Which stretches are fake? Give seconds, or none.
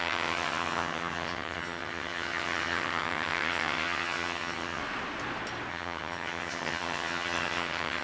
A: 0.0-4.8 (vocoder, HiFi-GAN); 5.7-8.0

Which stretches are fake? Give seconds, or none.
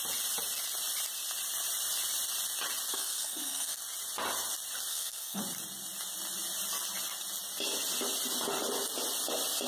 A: 2.9-3.8 (codec, SNAC); 4.9-5.4